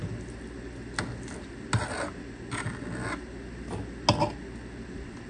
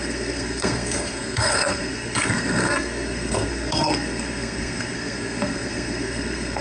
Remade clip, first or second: second